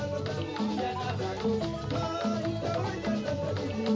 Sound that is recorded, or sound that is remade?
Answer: recorded